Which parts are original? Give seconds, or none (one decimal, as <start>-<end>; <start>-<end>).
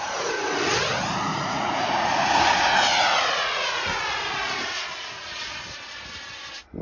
0.0-1.3; 5.4-6.8